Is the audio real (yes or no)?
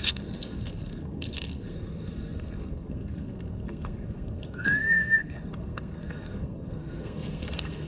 no